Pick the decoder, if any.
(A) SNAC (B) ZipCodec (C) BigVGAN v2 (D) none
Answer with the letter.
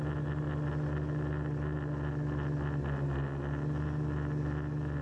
D